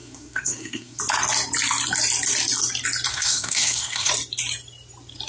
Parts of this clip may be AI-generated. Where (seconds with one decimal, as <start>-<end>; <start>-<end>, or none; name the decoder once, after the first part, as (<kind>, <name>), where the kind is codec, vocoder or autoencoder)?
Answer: 0.0-1.0 (codec, SNAC); 3.1-4.1